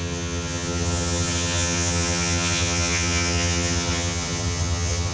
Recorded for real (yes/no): no